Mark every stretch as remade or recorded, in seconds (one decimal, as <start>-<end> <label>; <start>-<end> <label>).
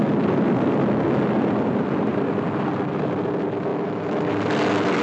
0.0-3.7 recorded; 3.7-4.3 remade; 4.3-5.0 recorded